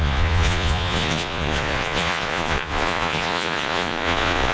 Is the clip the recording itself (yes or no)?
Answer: no